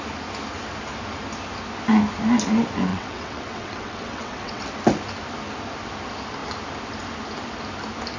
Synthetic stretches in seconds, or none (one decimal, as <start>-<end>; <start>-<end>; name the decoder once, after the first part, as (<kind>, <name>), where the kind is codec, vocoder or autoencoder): 2.9-4.6 (vocoder, WaveNeXt)